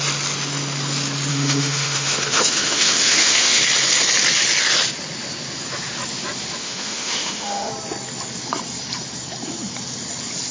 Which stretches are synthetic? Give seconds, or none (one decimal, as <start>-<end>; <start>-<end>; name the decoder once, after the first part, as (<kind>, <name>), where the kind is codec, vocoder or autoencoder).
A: 1.3-3.6 (autoencoder, DAC-VAE); 6.6-7.7